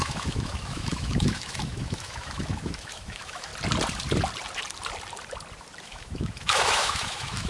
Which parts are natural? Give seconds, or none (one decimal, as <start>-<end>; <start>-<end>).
3.5-5.8